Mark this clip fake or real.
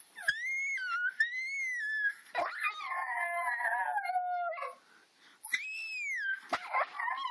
real